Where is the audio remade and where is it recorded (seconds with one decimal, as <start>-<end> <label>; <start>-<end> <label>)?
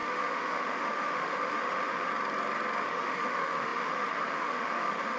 0.0-2.1 remade; 2.1-2.8 recorded; 2.8-5.2 remade